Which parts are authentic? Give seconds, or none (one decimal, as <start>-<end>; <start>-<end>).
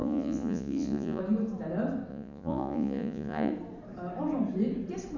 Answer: 1.2-2.1; 3.5-5.2